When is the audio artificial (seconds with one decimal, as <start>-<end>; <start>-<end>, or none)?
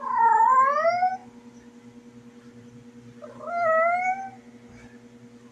none